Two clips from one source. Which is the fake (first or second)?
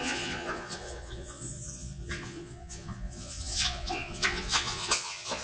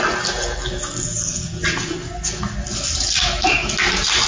first